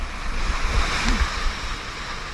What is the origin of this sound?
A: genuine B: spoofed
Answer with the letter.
A